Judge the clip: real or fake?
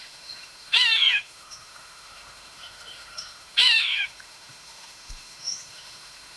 fake